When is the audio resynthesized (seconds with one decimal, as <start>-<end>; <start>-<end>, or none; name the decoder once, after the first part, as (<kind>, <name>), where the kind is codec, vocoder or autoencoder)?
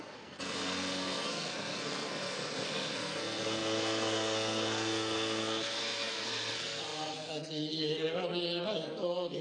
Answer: 0.0-9.4 (codec, SNAC)